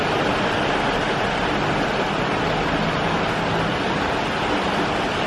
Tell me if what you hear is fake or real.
real